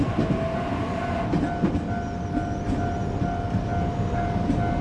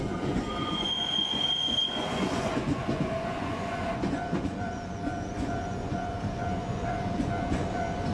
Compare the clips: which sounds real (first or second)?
first